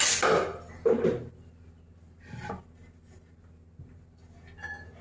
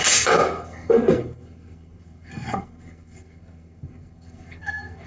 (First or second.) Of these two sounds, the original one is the first